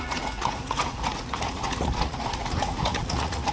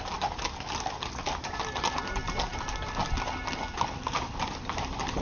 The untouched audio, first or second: second